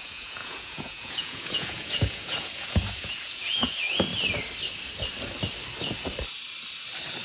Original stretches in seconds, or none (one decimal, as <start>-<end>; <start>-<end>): 4.1-7.2